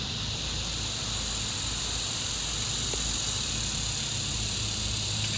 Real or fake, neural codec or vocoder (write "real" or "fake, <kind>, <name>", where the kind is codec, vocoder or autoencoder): real